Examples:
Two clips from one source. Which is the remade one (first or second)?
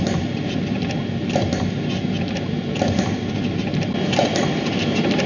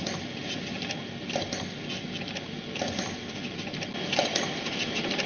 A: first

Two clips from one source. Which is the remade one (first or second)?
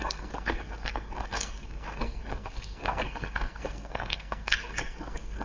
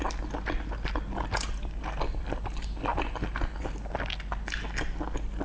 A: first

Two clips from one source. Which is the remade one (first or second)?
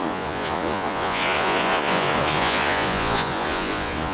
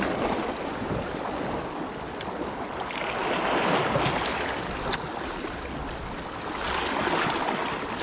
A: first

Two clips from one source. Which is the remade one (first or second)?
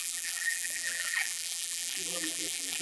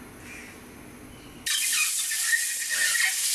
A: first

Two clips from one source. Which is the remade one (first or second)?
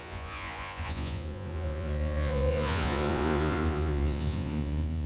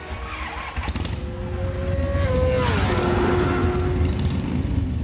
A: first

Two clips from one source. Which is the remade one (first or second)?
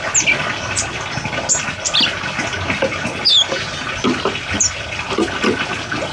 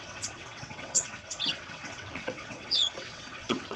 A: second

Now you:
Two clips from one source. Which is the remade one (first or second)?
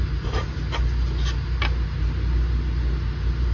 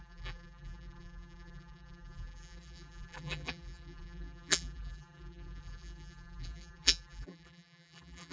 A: second